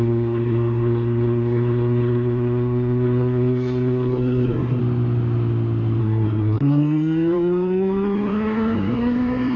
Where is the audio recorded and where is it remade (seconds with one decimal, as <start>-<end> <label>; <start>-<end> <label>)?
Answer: 0.0-4.8 remade; 4.8-6.0 recorded; 6.0-9.6 remade